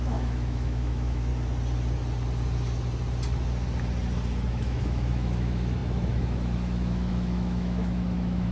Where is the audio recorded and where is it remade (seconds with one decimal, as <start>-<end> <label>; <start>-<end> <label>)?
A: 0.0-1.3 remade; 1.3-4.5 recorded; 4.5-8.5 remade